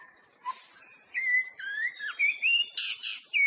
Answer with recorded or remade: recorded